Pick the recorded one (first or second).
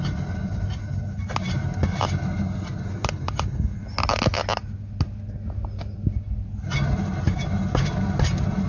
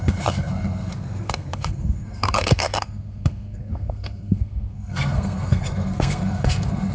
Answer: first